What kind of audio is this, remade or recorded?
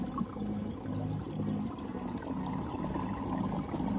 recorded